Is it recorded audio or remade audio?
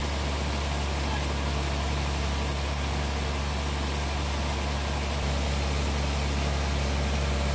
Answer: recorded